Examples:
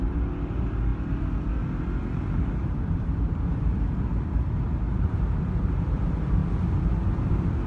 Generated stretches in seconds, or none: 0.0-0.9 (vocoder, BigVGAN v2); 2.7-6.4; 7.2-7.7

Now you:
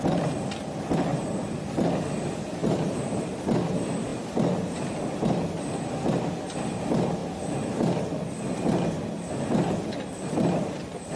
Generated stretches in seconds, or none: 1.1-1.9 (vocoder, BigVGAN v2); 2.6-3.4

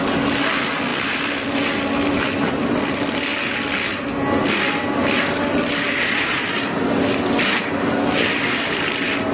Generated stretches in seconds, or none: none

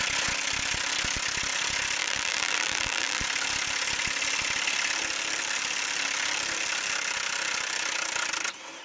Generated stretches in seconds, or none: 2.0-3.2 (vocoder, BigVGAN v2)

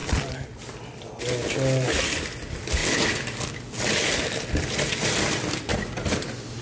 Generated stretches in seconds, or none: 5.7-6.6 (vocoder, BigVGAN v2)